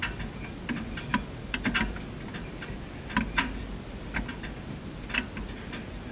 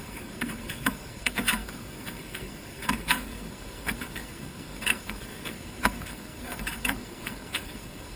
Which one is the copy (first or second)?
second